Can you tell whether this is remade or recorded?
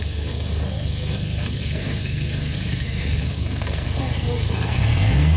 remade